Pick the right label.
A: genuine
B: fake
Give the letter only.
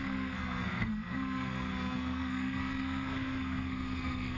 B